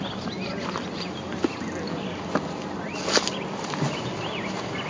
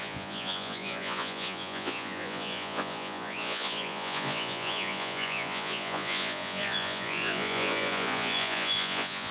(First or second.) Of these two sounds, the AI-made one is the second